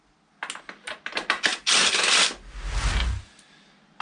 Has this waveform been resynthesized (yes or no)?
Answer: no